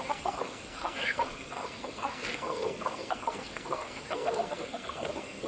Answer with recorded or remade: remade